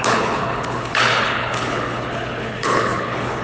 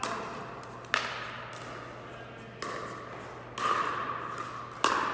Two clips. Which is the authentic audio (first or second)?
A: second